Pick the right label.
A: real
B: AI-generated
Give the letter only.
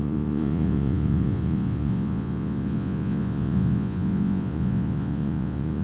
B